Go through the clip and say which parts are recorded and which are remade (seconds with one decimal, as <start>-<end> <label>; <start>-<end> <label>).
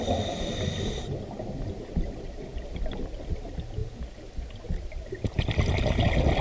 0.0-6.4 recorded